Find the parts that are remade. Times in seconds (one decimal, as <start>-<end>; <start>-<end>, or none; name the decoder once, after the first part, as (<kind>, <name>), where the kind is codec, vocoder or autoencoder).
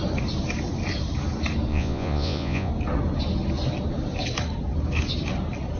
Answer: 1.7-2.7 (vocoder, Vocos)